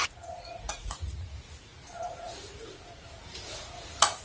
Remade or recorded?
remade